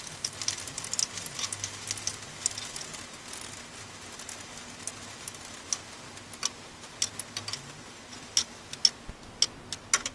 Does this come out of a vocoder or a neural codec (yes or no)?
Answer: no